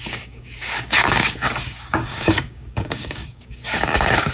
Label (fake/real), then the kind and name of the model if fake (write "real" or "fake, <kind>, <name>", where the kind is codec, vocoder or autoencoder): fake, codec, DAC